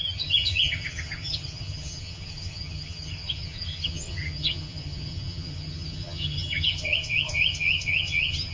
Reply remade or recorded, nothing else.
remade